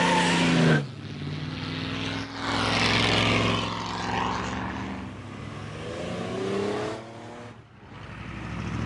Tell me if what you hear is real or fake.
real